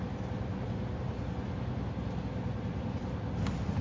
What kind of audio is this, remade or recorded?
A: recorded